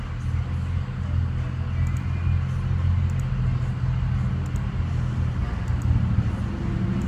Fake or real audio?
real